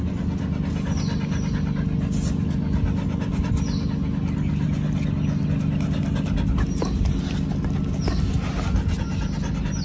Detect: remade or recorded recorded